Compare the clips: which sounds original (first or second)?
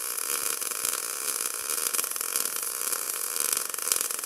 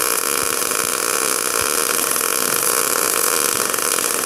second